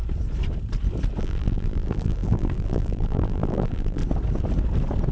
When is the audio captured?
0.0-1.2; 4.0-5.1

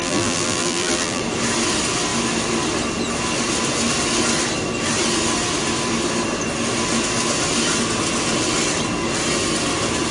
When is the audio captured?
1.2-10.1